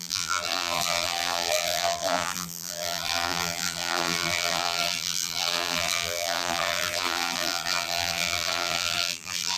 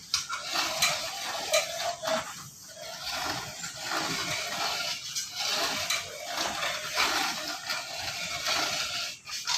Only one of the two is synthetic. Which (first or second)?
first